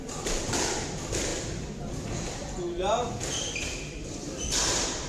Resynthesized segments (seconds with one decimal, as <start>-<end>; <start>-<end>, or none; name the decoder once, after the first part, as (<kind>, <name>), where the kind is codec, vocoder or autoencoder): none